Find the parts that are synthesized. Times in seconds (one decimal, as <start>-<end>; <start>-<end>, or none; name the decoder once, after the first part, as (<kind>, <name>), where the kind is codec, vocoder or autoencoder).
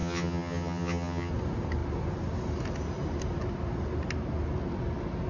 0.0-1.3 (vocoder, HiFi-GAN)